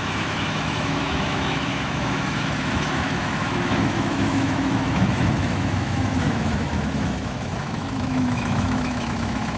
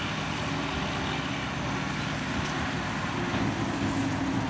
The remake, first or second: first